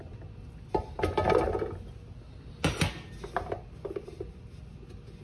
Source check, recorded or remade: recorded